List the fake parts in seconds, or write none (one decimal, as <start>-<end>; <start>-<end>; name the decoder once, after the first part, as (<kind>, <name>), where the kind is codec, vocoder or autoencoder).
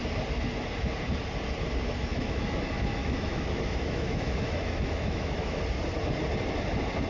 2.1-2.6 (autoencoder, DAC-VAE); 3.0-5.6